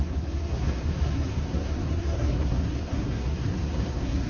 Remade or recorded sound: remade